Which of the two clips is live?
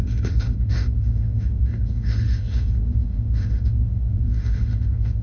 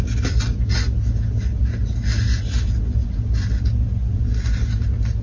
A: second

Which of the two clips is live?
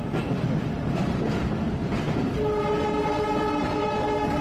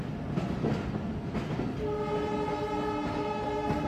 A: second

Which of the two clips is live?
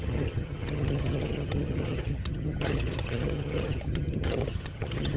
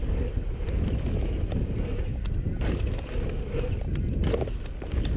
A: second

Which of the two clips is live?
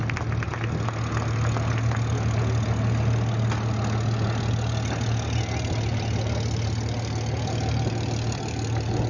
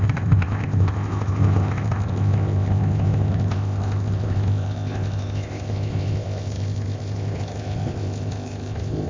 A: first